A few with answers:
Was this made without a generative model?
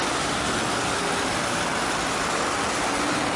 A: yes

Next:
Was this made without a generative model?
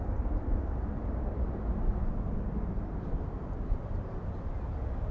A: yes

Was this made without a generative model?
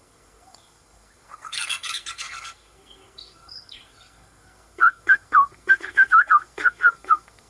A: no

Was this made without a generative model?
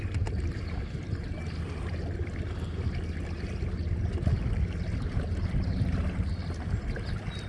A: yes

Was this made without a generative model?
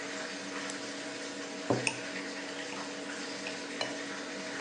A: yes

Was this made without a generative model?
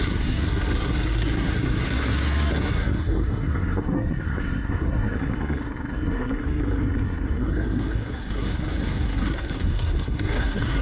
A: no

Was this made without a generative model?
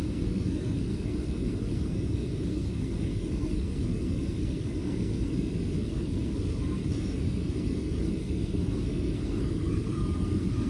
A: no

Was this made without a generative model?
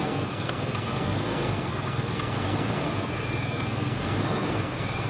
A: no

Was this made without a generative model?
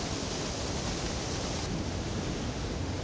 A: yes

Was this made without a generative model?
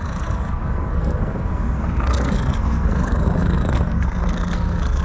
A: no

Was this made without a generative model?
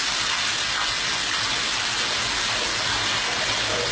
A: yes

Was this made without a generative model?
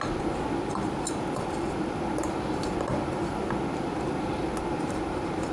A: yes